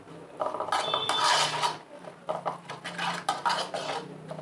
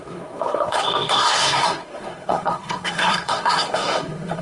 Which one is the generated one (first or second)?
second